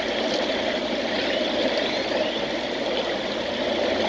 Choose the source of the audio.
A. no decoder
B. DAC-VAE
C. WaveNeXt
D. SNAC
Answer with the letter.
A